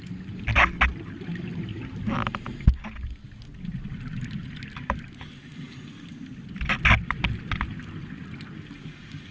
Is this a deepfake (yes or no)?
no